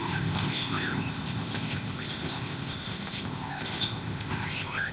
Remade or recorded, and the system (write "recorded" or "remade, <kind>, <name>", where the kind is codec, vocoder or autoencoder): remade, codec, ZipCodec